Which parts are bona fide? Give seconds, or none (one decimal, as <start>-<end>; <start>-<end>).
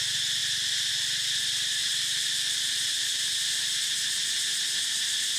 0.0-1.8; 2.7-5.4